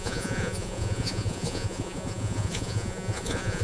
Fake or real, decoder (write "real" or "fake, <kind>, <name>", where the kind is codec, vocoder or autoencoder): fake, vocoder, Vocos